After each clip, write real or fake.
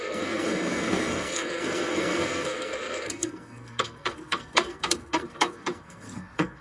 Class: fake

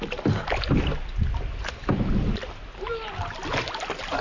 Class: real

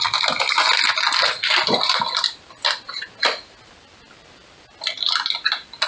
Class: real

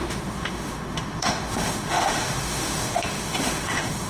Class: fake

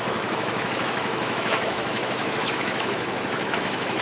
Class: fake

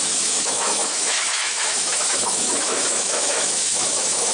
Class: fake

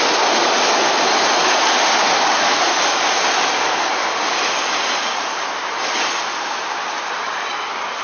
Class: real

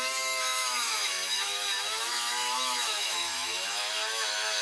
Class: fake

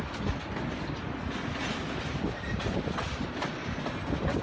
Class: real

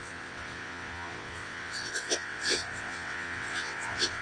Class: fake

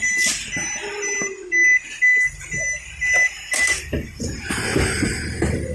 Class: real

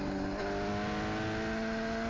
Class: real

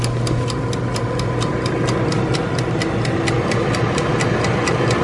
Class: real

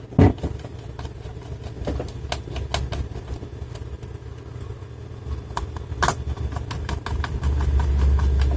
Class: real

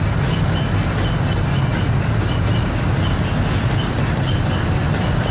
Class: real